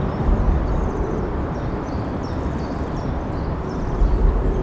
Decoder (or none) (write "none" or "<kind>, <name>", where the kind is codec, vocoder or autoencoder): none